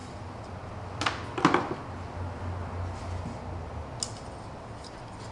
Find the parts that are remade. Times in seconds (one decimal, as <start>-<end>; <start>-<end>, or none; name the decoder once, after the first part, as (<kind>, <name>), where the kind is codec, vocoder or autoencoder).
none

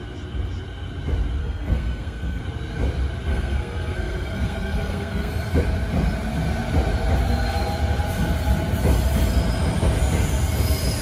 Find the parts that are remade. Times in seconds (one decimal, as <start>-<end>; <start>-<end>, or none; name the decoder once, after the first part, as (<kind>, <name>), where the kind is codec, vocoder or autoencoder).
1.4-2.4 (codec, SNAC); 3.3-5.3

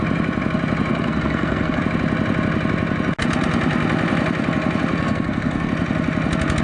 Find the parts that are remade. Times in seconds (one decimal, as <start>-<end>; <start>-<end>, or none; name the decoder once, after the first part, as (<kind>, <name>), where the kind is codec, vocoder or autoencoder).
0.9-1.8 (codec, SNAC); 4.9-5.7